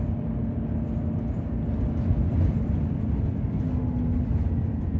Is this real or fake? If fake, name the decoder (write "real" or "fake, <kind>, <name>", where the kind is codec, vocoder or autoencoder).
real